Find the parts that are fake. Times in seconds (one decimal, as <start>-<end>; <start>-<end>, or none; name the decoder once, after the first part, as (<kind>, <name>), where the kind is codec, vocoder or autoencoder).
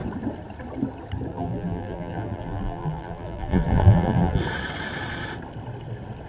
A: 1.3-4.4 (vocoder, BigVGAN v2)